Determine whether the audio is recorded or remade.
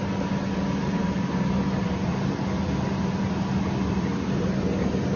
recorded